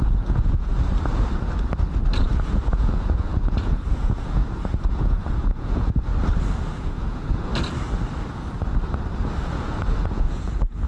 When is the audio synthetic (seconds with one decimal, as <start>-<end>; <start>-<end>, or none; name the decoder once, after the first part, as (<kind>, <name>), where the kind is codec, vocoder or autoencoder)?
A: 0.0-0.7 (vocoder, Vocos); 2.2-4.4; 4.9-6.1; 6.6-7.5; 9.4-10.9